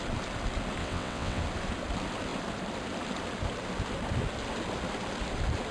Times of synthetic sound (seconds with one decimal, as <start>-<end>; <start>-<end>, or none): 0.8-1.4